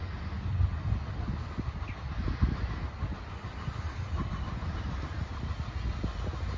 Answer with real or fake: real